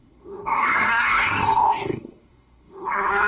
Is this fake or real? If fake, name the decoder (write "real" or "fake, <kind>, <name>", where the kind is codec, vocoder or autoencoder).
fake, codec, SNAC